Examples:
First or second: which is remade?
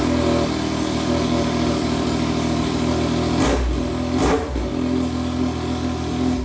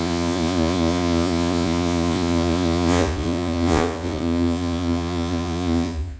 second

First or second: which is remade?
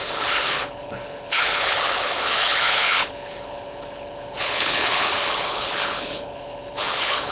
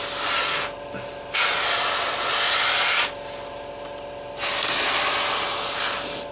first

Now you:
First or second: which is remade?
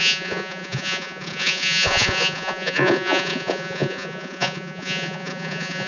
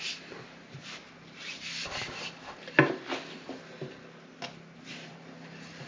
first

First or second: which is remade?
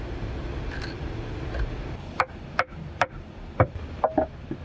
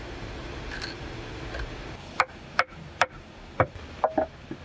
first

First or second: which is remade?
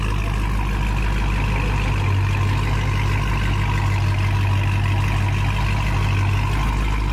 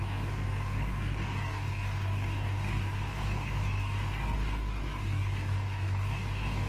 second